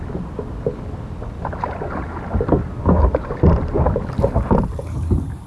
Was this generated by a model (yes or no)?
no